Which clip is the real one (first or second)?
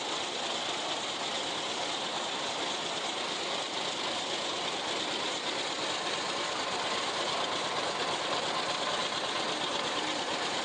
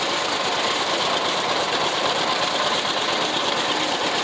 first